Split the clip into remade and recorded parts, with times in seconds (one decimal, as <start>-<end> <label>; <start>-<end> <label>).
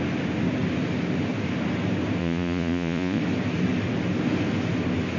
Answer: 0.0-2.2 recorded; 2.2-3.2 remade; 3.2-5.2 recorded